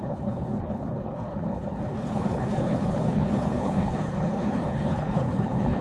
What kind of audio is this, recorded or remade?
remade